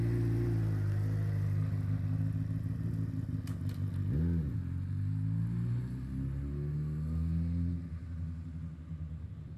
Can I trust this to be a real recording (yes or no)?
yes